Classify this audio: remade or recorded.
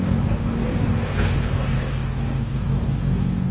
remade